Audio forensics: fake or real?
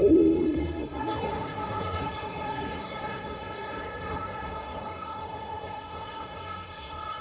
fake